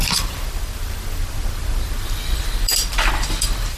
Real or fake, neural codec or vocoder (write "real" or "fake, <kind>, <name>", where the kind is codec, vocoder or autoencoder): fake, vocoder, BigVGAN v2